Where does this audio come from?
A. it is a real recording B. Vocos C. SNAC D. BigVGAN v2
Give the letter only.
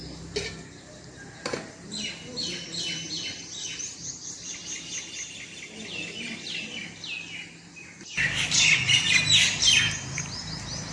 A